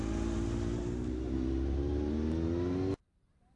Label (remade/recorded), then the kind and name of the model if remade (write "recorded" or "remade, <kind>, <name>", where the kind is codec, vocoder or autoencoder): recorded